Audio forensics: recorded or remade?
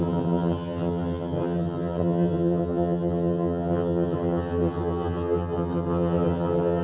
remade